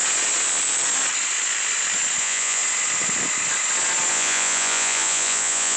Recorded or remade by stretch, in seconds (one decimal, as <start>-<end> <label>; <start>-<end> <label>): 0.0-2.2 recorded; 2.2-2.6 remade; 2.6-4.1 recorded; 4.1-5.8 remade